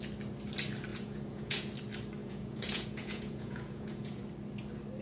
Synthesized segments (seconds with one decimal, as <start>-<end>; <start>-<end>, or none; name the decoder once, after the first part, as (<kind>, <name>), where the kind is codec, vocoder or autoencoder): 0.9-1.7 (vocoder, Vocos); 2.2-4.2